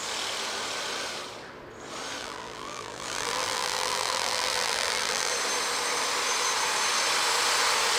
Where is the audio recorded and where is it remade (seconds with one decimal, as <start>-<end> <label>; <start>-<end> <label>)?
0.0-2.2 recorded; 2.2-5.3 remade; 5.3-8.0 recorded